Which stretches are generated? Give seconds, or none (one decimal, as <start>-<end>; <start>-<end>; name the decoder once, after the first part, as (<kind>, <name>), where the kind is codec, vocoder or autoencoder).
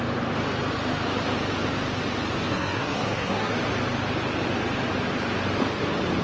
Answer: 2.5-3.5 (codec, SNAC)